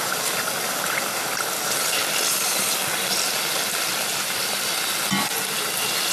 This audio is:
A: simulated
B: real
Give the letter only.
B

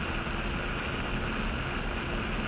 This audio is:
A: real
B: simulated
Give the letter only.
A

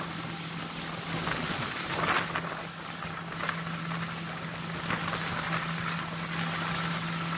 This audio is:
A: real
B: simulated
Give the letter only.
A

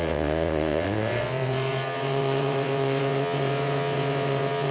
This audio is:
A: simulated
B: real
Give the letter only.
A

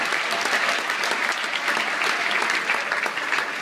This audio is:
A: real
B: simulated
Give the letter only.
A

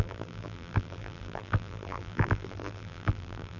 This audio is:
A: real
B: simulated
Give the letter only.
B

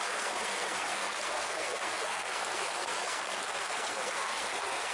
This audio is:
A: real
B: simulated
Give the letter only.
B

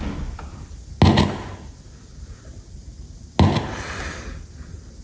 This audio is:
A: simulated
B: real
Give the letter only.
B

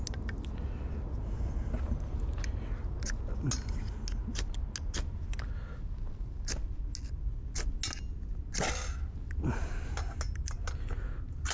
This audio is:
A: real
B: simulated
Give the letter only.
A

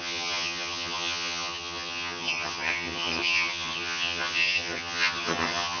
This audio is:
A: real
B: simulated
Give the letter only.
B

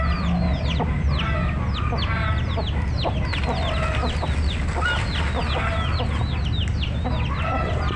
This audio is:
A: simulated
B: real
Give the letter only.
B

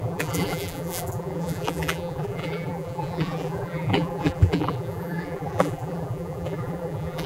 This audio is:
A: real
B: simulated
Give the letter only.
B